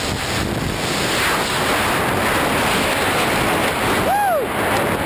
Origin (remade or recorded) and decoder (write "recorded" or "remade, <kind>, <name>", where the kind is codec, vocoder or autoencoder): recorded